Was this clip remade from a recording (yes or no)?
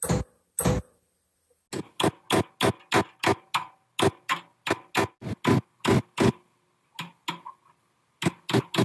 no